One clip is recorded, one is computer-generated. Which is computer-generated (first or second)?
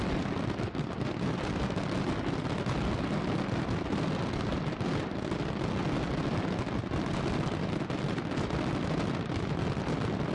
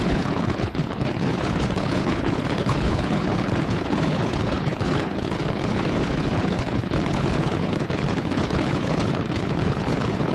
second